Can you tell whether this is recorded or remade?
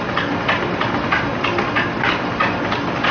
recorded